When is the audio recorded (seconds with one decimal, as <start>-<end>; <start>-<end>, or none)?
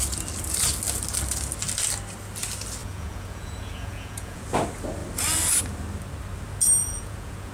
0.0-2.8; 4.4-6.8